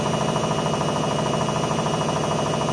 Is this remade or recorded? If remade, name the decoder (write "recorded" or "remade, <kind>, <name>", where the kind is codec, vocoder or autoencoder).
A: recorded